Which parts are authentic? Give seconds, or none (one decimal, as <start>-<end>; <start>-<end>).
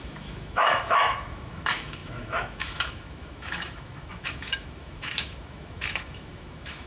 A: none